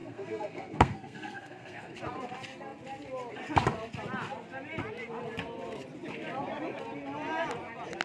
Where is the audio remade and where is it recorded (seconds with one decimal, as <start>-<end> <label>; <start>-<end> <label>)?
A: 0.0-2.0 remade; 2.0-8.0 recorded